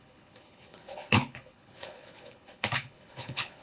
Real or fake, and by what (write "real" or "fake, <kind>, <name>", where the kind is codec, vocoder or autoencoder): fake, codec, HILCodec